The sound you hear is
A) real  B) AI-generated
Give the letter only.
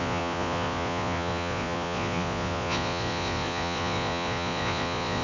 B